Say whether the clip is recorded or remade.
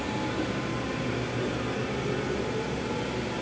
recorded